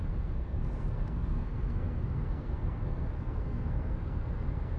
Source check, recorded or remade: remade